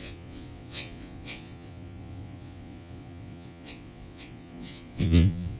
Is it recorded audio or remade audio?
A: remade